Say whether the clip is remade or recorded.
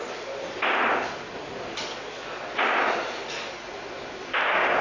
recorded